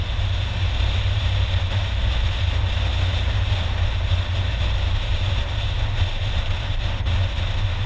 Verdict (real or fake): real